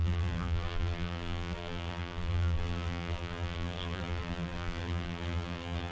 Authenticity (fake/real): fake